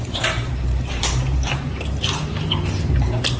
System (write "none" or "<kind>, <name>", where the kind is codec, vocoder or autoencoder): vocoder, BigVGAN v2